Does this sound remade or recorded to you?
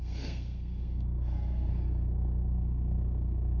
remade